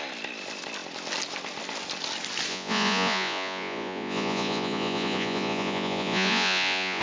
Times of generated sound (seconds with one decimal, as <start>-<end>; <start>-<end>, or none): 2.5-7.0